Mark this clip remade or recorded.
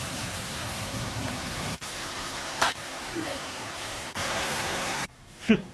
remade